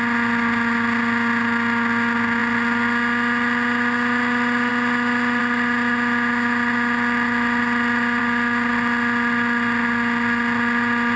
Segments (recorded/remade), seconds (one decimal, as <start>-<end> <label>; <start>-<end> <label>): 0.0-11.2 recorded